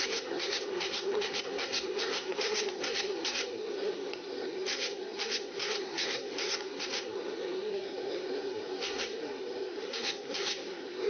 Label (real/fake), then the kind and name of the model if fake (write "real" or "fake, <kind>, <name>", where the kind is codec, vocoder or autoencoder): fake, codec, SNAC